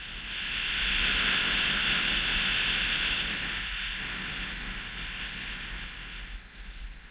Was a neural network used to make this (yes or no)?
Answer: no